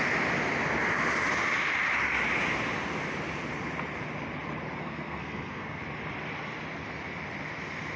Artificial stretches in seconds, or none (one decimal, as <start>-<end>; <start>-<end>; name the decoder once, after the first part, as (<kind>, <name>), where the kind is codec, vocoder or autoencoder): 4.8-5.8 (codec, SNAC)